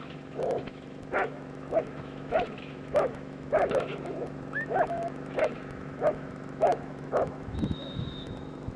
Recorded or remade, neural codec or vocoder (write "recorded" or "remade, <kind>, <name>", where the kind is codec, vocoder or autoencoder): remade, autoencoder, DAC-VAE